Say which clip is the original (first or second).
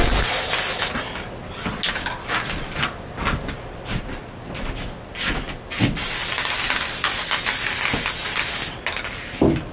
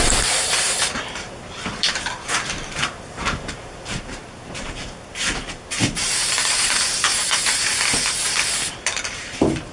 first